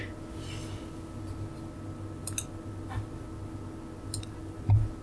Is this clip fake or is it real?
real